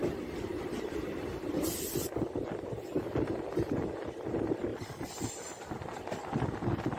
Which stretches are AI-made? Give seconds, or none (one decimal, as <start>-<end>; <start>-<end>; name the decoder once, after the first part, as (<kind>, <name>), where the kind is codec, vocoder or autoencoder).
4.7-6.0 (vocoder, BigVGAN v2)